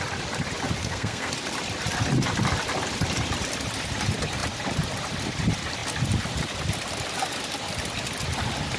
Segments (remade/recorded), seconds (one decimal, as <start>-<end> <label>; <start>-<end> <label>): 0.0-0.8 recorded; 0.8-1.3 remade; 1.3-8.8 recorded